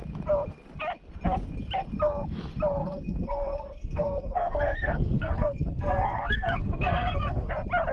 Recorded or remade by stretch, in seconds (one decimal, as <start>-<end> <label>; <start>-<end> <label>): 0.0-2.8 recorded; 2.8-7.5 remade; 7.5-7.9 recorded